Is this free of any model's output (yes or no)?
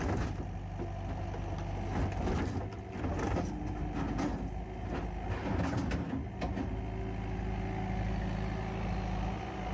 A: yes